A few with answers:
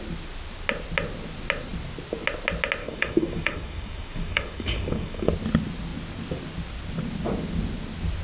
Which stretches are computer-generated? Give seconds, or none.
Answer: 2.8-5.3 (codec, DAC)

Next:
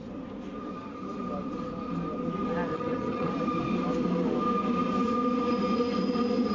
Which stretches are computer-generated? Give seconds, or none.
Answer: 2.7-3.3 (vocoder, HiFi-GAN)

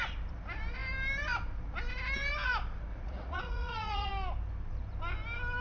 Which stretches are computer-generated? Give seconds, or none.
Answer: 2.9-4.1 (vocoder, Vocos)

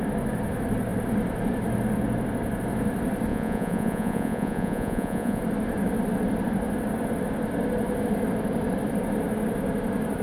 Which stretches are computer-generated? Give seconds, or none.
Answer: 3.3-5.4 (vocoder, Vocos)

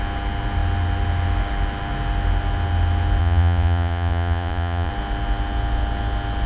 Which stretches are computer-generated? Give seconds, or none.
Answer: 3.2-4.9 (vocoder, Vocos)